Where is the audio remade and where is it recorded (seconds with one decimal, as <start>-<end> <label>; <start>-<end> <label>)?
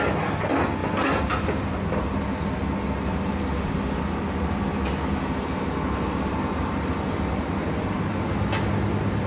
0.0-9.3 recorded